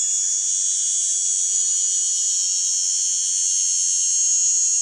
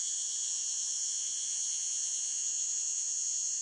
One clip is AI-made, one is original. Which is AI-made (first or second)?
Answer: second